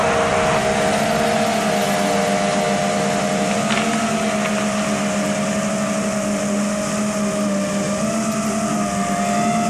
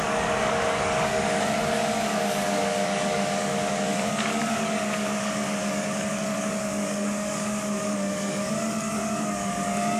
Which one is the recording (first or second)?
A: first